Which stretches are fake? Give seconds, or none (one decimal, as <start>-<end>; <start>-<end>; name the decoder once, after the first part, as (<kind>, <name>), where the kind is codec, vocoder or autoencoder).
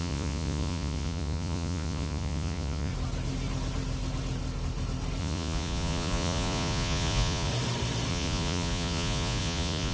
0.0-2.9 (vocoder, Vocos); 5.2-7.5; 8.1-9.9